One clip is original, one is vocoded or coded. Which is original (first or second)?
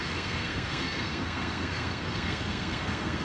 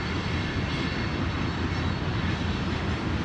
second